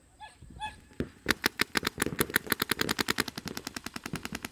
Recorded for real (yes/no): no